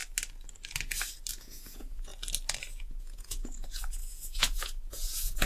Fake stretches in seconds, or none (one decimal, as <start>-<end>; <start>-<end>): 1.3-2.1; 2.7-5.5